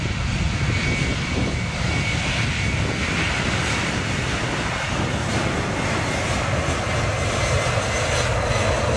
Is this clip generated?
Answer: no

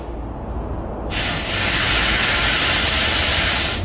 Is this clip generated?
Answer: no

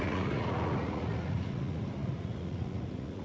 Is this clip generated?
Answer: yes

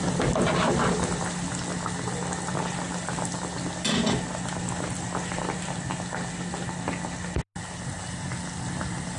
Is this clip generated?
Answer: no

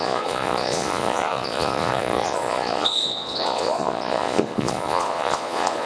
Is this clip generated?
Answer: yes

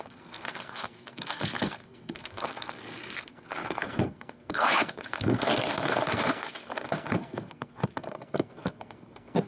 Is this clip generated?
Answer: yes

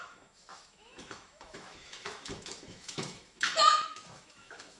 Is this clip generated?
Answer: yes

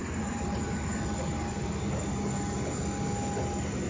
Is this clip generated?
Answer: no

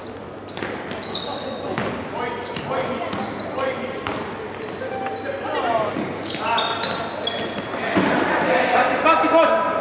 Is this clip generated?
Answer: no